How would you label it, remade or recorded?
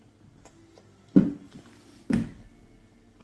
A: recorded